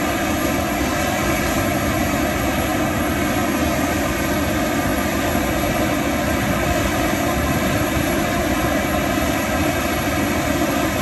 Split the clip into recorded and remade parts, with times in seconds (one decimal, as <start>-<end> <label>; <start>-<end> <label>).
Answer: 0.0-11.0 recorded